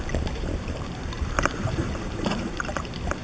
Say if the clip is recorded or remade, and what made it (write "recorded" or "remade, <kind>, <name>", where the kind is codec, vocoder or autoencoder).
remade, vocoder, BigVGAN v2